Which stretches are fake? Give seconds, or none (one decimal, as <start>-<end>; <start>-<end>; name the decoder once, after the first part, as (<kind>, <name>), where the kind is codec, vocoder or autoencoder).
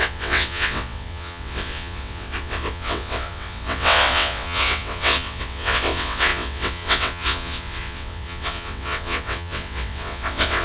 0.0-10.6 (vocoder, WaveNeXt)